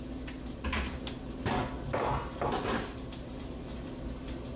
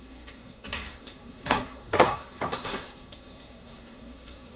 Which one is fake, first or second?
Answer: second